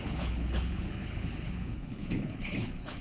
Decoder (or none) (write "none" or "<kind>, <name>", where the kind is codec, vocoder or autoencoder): codec, HILCodec